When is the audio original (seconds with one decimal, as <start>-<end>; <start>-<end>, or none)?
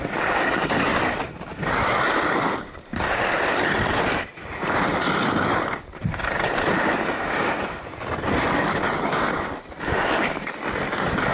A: 0.0-11.3